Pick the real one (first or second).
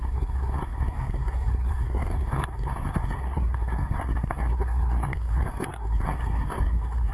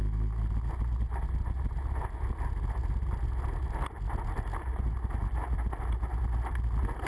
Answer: second